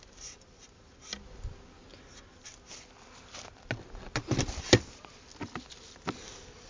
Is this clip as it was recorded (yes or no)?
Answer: yes